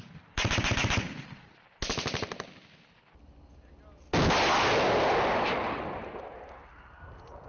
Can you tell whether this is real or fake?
real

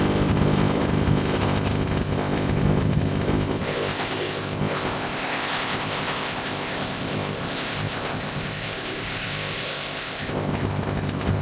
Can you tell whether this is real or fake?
fake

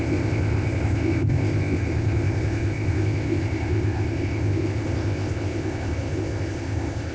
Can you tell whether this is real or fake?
fake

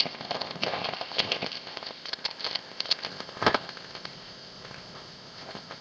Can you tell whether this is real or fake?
fake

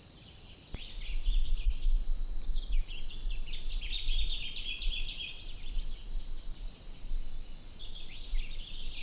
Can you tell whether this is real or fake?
real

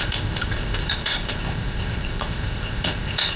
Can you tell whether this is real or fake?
fake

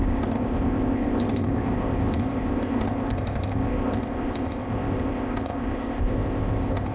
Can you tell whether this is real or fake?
fake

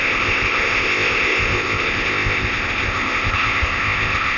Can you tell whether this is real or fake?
fake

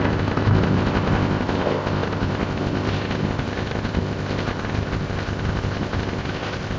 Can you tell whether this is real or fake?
fake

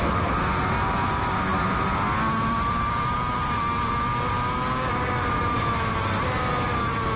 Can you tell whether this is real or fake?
real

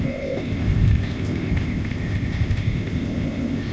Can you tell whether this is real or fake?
fake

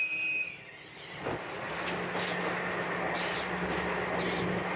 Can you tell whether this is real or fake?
real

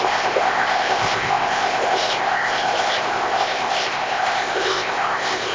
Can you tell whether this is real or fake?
fake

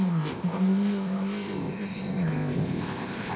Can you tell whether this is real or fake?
fake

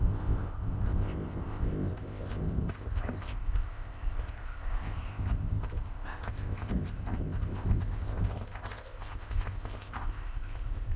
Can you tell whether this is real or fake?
fake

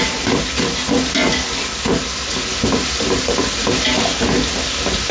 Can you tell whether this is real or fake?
real